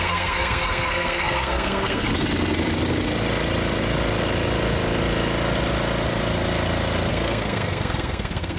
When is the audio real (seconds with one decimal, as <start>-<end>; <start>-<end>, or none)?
2.1-7.1